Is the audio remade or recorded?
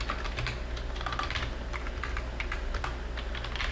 recorded